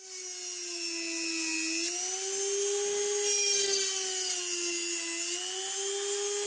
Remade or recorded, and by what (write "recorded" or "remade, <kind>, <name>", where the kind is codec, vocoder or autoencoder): recorded